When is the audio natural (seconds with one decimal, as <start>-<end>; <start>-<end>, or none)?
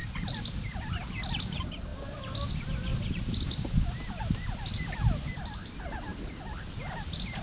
2.9-4.2; 6.1-7.4